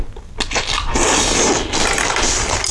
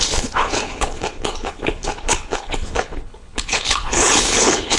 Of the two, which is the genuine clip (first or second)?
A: first